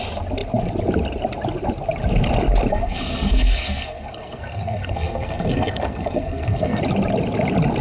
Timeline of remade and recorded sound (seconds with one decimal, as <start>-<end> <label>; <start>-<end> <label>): 0.0-2.7 recorded; 2.7-6.8 remade; 6.8-7.8 recorded